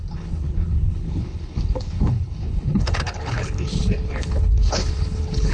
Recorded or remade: remade